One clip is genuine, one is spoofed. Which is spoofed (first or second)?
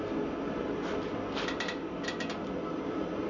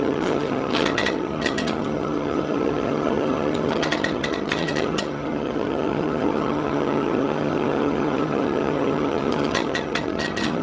second